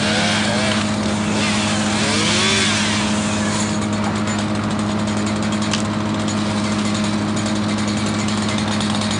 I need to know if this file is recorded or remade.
recorded